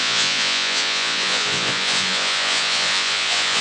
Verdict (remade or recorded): remade